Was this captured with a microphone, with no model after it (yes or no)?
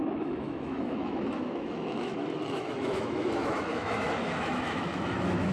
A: no